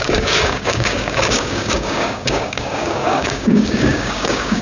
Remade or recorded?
remade